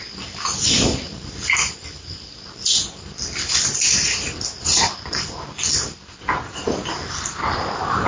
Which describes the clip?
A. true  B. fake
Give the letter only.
B